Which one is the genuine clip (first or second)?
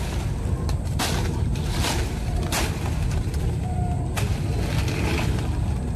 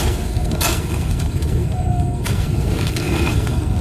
first